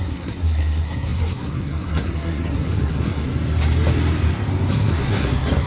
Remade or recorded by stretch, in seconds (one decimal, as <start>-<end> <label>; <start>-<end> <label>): 0.0-3.3 remade; 3.3-4.7 recorded; 4.7-5.7 remade